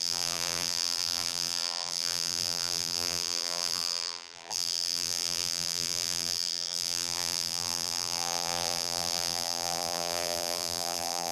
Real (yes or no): no